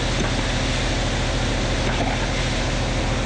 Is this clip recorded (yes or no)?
yes